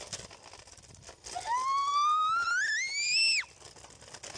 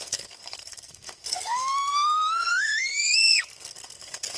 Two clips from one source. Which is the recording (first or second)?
first